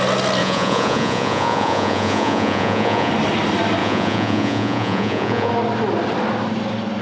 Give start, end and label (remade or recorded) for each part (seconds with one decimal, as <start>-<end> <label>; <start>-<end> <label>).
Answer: 0.0-0.4 recorded; 0.4-3.1 remade; 3.1-3.8 recorded; 3.8-5.5 remade; 5.5-7.0 recorded